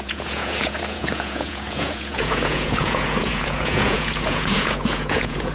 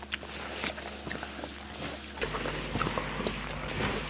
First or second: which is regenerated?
first